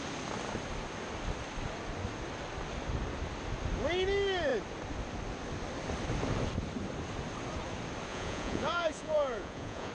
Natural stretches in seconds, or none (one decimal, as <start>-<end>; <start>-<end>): 0.0-8.1